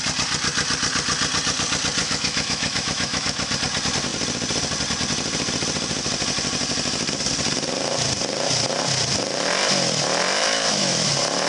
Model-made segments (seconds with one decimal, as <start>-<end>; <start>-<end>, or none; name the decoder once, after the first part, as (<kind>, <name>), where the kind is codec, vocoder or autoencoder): 2.0-3.5 (autoencoder, DAC-VAE); 10.4-11.1

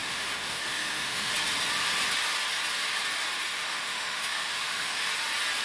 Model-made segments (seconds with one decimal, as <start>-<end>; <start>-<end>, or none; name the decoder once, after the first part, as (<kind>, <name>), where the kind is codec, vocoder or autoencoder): 0.0-1.3 (autoencoder, DAC-VAE); 3.5-5.0

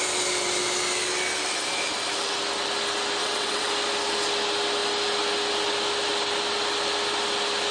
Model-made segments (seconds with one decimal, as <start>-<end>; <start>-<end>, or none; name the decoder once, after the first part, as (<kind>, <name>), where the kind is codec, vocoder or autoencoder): 3.2-3.7 (vocoder, WaveNeXt)

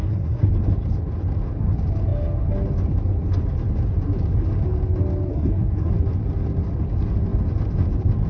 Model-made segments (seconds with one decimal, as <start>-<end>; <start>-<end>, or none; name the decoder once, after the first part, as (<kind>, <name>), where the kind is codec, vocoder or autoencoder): 0.0-0.5 (codec, SNAC); 5.3-5.9

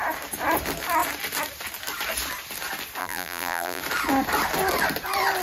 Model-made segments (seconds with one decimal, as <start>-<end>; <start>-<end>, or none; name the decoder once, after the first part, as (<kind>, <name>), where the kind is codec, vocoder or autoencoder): 3.0-3.8 (vocoder, BigVGAN v2)

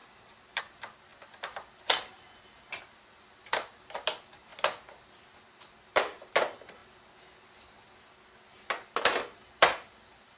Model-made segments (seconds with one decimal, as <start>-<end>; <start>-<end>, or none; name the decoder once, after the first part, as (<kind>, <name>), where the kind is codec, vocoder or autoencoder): 0.0-4.5 (vocoder, BigVGAN v2); 5.7-10.4